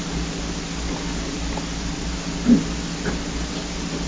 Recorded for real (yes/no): yes